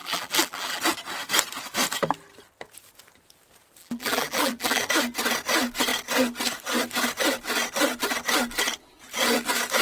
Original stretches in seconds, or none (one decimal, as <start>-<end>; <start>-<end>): 0.8-3.8; 4.9-9.8